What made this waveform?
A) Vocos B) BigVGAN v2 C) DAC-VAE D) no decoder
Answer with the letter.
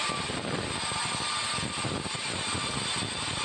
D